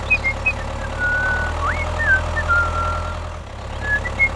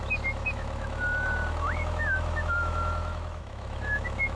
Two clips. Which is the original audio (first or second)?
first